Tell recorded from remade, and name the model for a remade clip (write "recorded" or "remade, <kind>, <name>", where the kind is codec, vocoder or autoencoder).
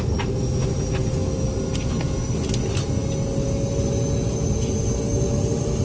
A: recorded